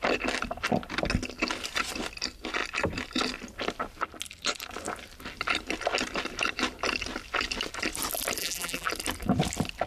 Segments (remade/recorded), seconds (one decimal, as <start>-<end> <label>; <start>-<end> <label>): 0.0-8.4 recorded; 8.4-8.9 remade; 8.9-9.9 recorded

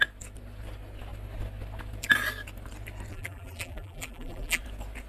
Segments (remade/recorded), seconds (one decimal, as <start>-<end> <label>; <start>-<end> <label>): 0.0-3.1 recorded; 3.1-4.6 remade; 4.6-5.1 recorded

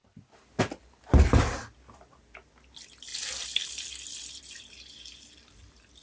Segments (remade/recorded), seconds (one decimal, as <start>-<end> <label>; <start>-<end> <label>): 0.0-6.0 recorded